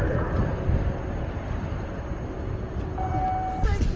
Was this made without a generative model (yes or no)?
yes